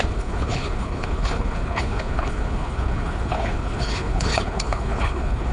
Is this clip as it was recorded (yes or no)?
no